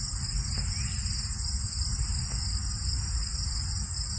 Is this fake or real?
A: real